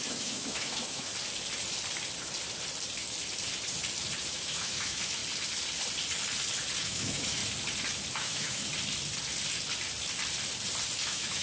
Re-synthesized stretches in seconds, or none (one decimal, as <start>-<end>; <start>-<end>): 0.0-1.1; 4.3-5.2; 6.8-7.4; 8.1-8.7; 11.0-11.4